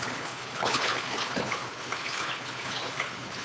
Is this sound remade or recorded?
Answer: remade